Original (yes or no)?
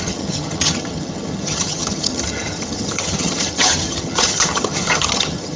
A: no